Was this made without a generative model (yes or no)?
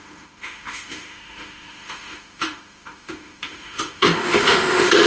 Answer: no